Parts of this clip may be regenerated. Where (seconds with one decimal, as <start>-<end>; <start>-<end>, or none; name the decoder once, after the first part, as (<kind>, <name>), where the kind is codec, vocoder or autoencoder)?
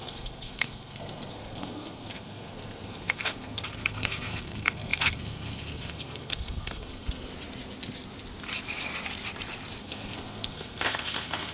0.0-7.3 (codec, SNAC); 9.8-11.5